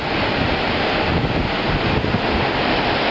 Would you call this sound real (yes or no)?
yes